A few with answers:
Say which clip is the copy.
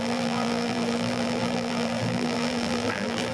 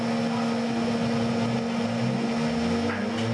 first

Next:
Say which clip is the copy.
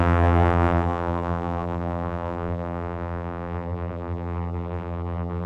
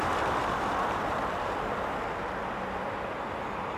first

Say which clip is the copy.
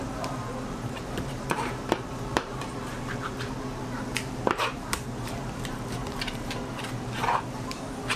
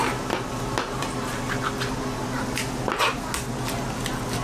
first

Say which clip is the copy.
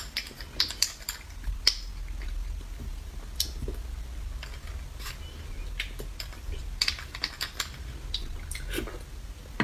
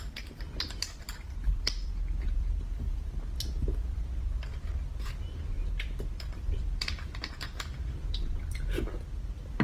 second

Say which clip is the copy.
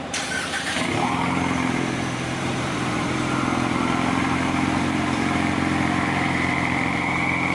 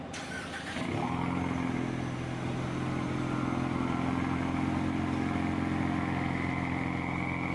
first